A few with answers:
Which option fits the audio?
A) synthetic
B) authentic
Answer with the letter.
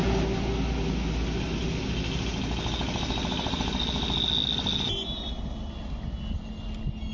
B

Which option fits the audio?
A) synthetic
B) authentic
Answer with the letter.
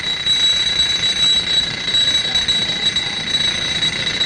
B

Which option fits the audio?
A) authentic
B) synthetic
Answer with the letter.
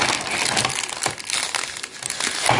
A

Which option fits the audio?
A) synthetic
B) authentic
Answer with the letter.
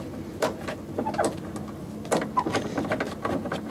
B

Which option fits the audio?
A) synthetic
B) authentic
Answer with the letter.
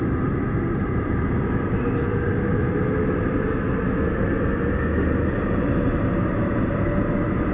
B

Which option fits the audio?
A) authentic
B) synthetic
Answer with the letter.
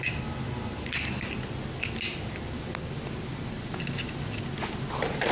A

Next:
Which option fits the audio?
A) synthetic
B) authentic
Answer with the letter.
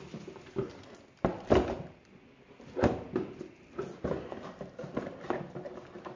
B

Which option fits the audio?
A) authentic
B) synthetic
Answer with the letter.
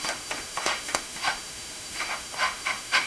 B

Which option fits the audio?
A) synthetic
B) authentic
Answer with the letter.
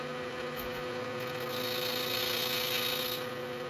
B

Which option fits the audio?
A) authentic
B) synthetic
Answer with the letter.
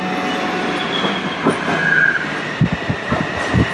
A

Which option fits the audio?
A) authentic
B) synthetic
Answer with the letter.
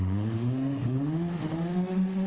B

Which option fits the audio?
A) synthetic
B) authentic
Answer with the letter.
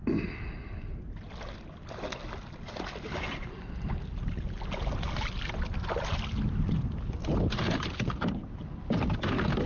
B